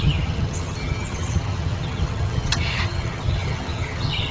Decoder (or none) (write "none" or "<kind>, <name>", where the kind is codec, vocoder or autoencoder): vocoder, HiFi-GAN